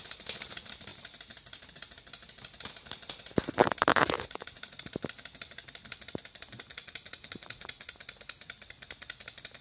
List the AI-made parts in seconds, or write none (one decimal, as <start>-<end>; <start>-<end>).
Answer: 3.9-4.8; 6.7-7.9